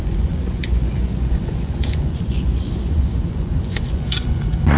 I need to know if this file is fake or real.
fake